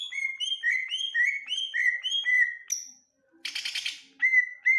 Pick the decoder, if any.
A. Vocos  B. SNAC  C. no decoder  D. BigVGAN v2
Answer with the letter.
C